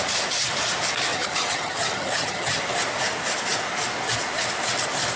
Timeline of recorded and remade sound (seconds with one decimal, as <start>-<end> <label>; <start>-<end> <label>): 0.0-1.1 recorded; 1.1-2.6 remade; 2.6-5.2 recorded